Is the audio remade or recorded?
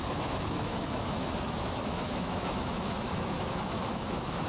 remade